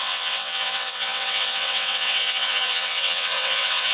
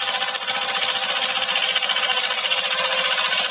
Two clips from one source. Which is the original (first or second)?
second